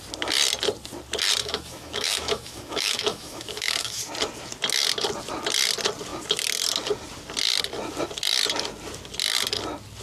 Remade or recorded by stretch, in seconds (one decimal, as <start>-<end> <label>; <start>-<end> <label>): 0.0-1.4 recorded; 1.4-4.0 remade; 4.0-10.0 recorded

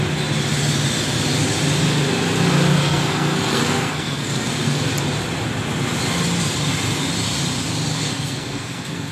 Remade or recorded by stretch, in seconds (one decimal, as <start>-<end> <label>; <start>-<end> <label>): 0.0-2.7 recorded; 2.7-4.9 remade; 4.9-7.9 recorded; 7.9-9.1 remade

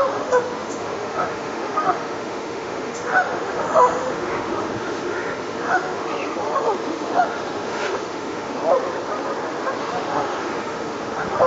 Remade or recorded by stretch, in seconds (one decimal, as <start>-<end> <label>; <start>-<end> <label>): 0.0-8.6 remade; 8.6-9.8 recorded; 9.8-11.5 remade

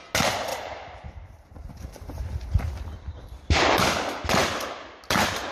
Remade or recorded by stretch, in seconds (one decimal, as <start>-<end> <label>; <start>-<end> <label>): 0.0-0.5 recorded; 0.5-3.8 remade; 3.8-5.5 recorded

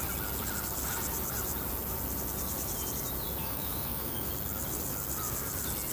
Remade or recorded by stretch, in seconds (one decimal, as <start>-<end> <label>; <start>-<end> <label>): 0.0-3.4 recorded; 3.4-4.3 remade; 4.3-5.9 recorded

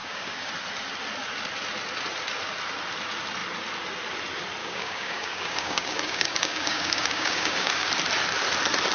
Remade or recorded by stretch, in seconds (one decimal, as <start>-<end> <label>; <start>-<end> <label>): 0.0-0.5 remade; 0.5-4.6 recorded; 4.6-7.9 remade; 7.9-8.9 recorded